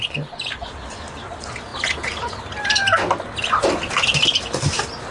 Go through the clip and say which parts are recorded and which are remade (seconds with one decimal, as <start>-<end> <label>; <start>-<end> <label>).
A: 0.0-5.1 recorded